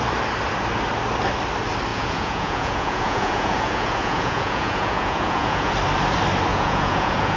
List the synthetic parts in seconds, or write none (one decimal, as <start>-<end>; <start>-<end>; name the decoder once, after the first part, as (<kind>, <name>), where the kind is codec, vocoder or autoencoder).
1.9-5.7 (vocoder, Vocos); 6.5-7.4